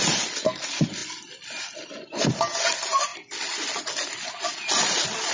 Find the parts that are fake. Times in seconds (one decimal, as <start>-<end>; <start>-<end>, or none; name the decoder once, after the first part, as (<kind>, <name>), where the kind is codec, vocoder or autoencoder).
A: none